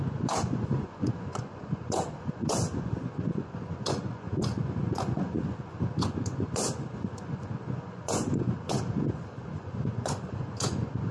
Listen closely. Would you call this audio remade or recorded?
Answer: remade